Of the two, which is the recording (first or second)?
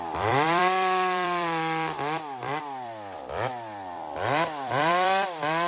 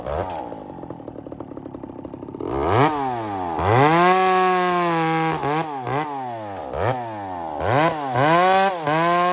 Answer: second